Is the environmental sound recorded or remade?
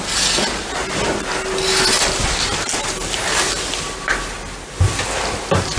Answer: recorded